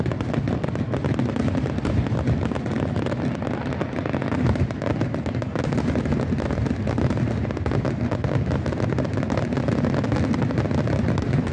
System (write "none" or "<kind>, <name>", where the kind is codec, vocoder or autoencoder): none